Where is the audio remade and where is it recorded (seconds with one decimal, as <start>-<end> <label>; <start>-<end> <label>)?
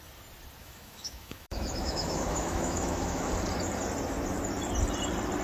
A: 0.0-0.6 recorded; 0.6-3.3 remade; 3.3-5.4 recorded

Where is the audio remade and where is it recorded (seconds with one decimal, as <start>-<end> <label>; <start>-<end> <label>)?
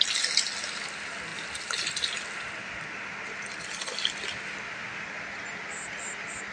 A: 0.0-6.5 recorded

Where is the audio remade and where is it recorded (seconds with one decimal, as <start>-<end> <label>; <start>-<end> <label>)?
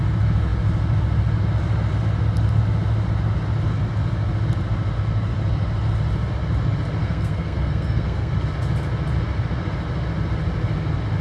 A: 0.0-7.0 recorded; 7.0-8.3 remade; 8.3-11.2 recorded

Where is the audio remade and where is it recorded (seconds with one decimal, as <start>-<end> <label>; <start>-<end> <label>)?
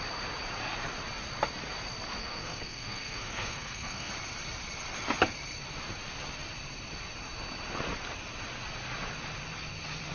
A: 0.0-2.2 recorded; 2.2-4.1 remade; 4.1-10.1 recorded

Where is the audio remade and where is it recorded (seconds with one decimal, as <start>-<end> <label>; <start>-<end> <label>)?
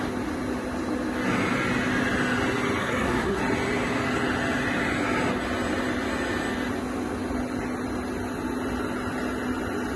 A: 0.0-2.8 recorded; 2.8-3.4 remade; 3.4-10.0 recorded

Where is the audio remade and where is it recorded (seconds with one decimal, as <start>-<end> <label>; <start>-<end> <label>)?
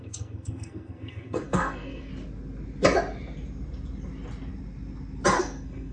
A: 0.0-2.1 remade; 2.1-5.4 recorded; 5.4-5.9 remade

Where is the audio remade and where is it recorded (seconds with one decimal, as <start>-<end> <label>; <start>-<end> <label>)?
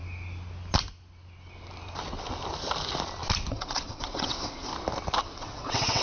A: 0.0-3.5 recorded; 3.5-4.7 remade; 4.7-5.2 recorded; 5.2-6.0 remade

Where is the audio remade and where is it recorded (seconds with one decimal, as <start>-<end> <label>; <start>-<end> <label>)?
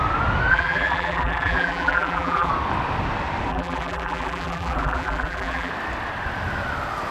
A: 0.0-0.5 recorded; 0.5-2.5 remade; 2.5-3.5 recorded; 3.5-5.7 remade; 5.7-7.1 recorded